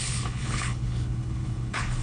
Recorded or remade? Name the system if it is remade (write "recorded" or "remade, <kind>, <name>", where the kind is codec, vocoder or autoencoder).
remade, codec, HILCodec